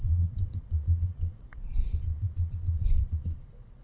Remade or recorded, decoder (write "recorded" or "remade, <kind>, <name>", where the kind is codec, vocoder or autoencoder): remade, vocoder, Vocos